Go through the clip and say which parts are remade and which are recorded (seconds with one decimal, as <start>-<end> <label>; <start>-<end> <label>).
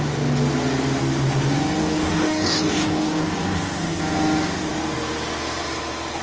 0.0-1.8 recorded; 1.8-4.0 remade; 4.0-6.2 recorded